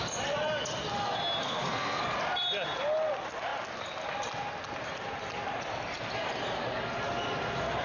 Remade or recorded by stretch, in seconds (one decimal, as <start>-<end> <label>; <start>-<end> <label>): 0.0-1.4 recorded; 1.4-2.0 remade; 2.0-7.8 recorded